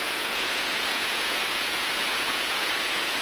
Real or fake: fake